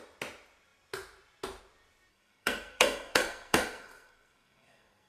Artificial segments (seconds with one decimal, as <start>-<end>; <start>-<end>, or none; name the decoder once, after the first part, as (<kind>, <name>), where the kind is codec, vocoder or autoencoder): 2.1-5.1 (codec, SNAC)